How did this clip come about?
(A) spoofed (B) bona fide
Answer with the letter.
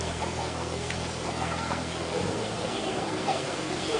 A